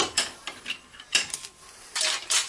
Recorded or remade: recorded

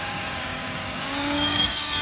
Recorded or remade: remade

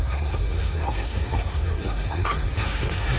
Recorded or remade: remade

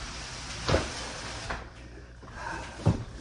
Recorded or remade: remade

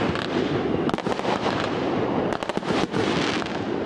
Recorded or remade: recorded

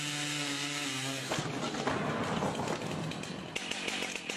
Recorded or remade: recorded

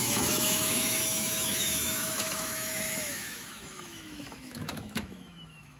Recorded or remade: remade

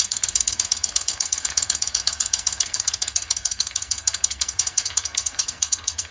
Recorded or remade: remade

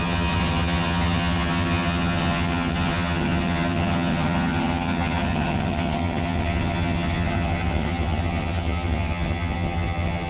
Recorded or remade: remade